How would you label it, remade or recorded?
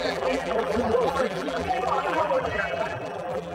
remade